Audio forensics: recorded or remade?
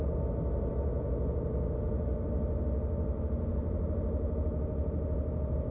recorded